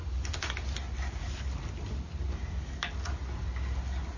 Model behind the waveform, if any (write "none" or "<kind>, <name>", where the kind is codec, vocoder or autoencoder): none